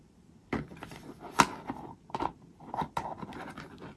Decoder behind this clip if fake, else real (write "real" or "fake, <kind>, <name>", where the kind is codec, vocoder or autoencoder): fake, vocoder, BigVGAN v2